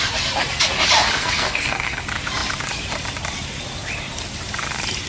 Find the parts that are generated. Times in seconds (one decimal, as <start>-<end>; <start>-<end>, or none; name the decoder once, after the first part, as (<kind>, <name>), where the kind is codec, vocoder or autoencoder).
1.2-2.0 (codec, SNAC)